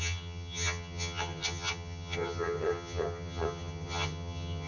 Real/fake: fake